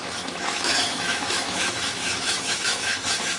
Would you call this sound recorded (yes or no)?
no